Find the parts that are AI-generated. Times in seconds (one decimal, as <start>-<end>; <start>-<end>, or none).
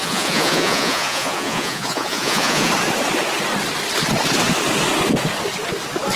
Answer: 0.0-2.7